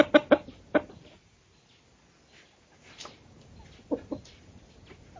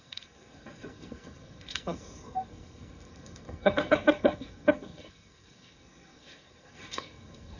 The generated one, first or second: second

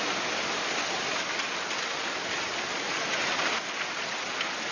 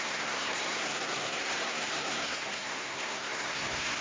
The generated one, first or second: second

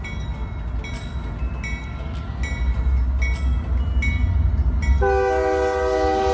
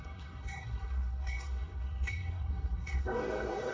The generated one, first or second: second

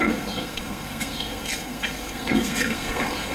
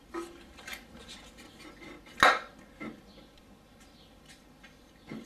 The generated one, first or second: first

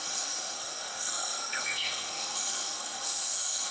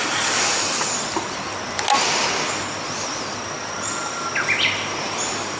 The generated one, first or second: first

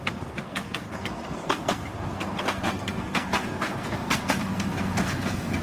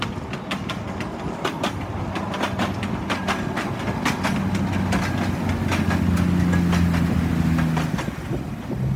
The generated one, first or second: first